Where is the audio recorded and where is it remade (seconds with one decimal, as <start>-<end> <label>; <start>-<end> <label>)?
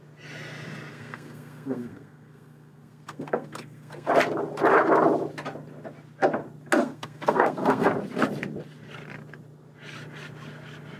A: 0.0-0.9 recorded; 0.9-4.1 remade; 4.1-6.8 recorded; 6.8-7.9 remade; 7.9-11.0 recorded